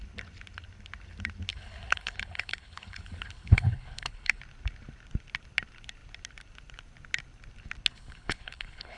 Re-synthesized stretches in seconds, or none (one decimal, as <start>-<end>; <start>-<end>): 1.5-4.4; 7.9-9.0